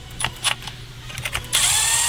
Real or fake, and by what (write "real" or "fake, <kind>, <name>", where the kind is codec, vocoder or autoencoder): real